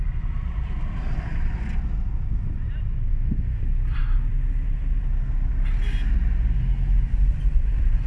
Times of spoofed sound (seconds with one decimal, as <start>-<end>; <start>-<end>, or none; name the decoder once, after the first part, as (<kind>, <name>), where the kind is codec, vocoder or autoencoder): 3.1-3.6 (autoencoder, DAC-VAE)